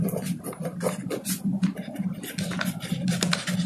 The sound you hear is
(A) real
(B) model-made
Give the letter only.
B